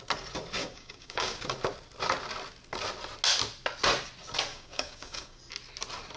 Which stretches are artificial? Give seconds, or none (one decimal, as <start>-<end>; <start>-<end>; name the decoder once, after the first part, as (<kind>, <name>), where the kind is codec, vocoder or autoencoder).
0.6-1.4 (codec, DAC); 4.5-5.4